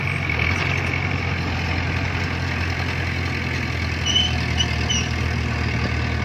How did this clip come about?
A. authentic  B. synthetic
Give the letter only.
A